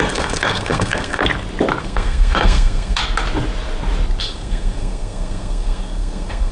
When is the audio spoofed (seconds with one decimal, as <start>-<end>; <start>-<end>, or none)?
0.0-1.2; 1.8-3.0; 4.2-6.5